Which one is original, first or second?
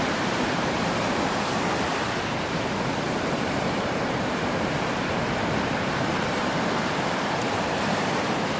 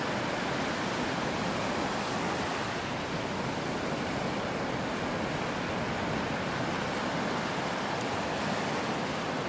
second